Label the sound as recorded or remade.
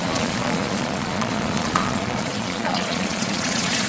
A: remade